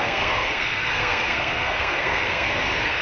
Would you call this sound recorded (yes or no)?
no